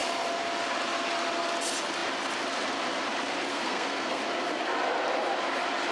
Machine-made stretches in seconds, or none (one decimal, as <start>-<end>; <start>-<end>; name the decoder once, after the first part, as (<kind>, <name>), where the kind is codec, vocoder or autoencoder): 3.5-4.2 (codec, SNAC)